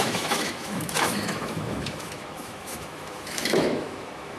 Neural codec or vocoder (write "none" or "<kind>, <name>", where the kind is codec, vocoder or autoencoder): autoencoder, DAC-VAE